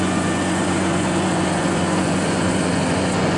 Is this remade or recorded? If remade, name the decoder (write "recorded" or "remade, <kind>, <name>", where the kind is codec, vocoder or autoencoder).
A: remade, vocoder, Vocos